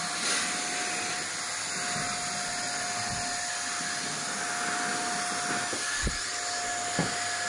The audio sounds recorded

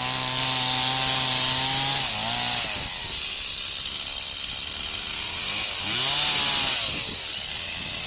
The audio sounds recorded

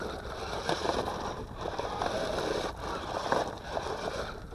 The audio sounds recorded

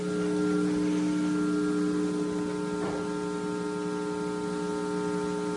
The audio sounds recorded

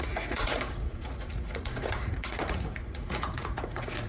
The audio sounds remade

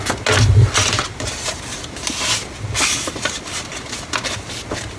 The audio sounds recorded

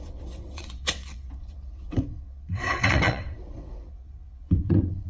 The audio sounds remade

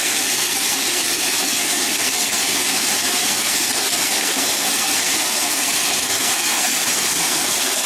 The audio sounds remade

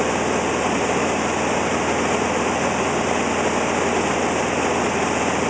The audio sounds recorded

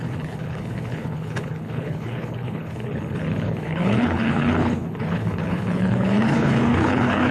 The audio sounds remade